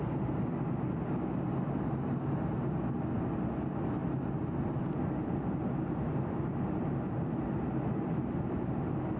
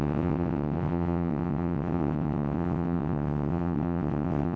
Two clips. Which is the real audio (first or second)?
first